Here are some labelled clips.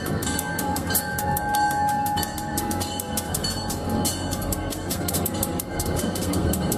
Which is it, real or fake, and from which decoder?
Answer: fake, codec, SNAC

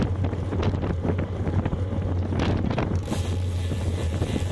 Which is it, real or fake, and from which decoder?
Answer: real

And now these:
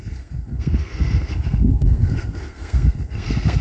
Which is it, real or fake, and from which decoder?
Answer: fake, codec, SNAC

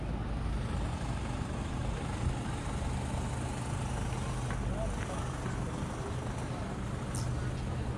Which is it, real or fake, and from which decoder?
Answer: real